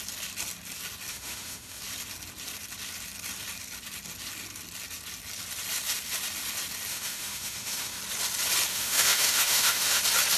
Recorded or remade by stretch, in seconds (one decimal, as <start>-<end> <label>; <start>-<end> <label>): 0.0-1.1 recorded; 1.1-1.8 remade; 1.8-6.9 recorded; 6.9-8.0 remade; 8.0-8.7 recorded; 8.7-10.0 remade; 10.0-10.4 recorded